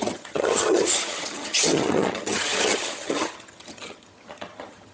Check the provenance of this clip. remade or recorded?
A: remade